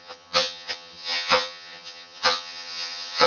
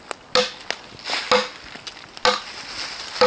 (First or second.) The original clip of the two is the second